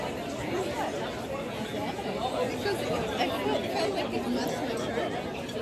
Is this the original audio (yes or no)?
yes